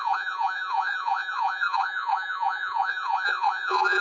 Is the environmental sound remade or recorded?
remade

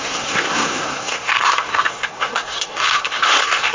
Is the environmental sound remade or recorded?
remade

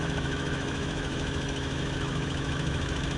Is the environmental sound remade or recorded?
remade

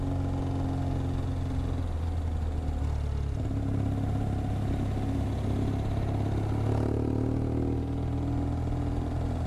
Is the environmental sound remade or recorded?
recorded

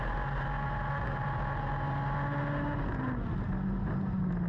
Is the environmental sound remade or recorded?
recorded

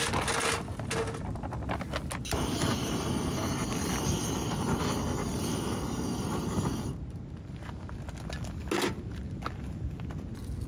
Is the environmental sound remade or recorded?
recorded